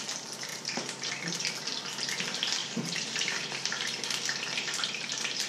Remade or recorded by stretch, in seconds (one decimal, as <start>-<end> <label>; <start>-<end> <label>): 0.0-0.5 recorded; 0.5-1.1 remade; 1.1-2.6 recorded; 2.6-5.5 remade